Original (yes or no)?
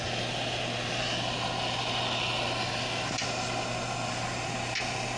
yes